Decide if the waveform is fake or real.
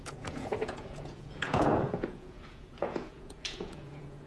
fake